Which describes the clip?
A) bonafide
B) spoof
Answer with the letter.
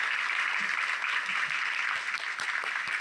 A